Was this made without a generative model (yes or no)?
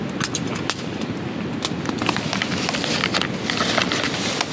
yes